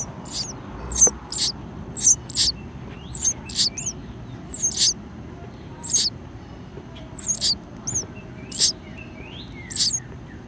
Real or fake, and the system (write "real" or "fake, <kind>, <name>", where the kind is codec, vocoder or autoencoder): real